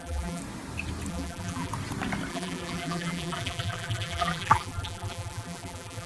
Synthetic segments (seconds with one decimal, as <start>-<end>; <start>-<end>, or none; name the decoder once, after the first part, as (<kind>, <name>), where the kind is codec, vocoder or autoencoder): 0.0-0.4 (vocoder, BigVGAN v2); 1.1-1.7; 2.3-6.1